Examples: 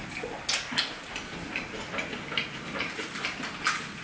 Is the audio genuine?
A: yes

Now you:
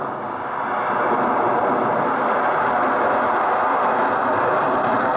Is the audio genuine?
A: yes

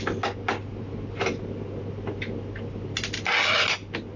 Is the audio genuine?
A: yes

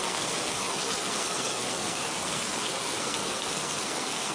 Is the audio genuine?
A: no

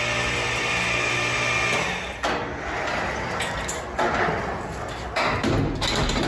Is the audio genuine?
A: yes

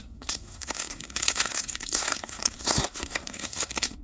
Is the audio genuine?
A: no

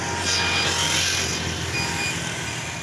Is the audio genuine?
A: yes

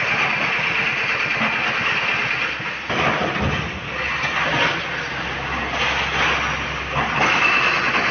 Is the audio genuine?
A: yes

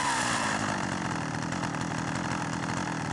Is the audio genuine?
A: yes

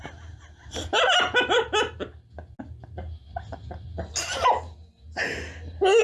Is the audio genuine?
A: yes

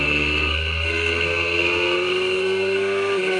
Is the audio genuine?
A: no